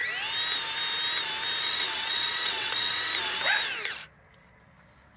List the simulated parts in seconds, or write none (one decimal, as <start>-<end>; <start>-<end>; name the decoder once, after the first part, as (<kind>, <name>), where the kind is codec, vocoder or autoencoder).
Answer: 1.6-3.1 (vocoder, WaveNeXt)